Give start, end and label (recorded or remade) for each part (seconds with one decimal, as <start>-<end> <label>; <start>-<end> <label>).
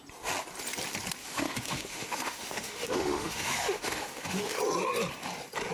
0.0-1.2 recorded; 1.2-4.6 remade; 4.6-5.7 recorded